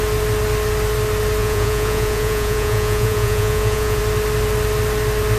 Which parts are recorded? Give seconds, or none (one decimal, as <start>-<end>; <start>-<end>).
0.0-1.4; 4.0-5.4